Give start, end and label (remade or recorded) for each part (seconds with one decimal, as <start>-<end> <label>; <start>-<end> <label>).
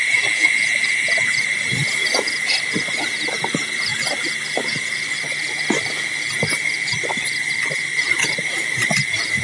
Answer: 0.0-9.4 recorded